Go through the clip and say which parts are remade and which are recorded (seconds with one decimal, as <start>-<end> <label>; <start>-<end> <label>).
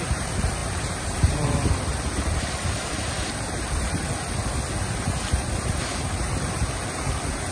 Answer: 0.0-4.4 remade; 4.4-5.6 recorded; 5.6-7.5 remade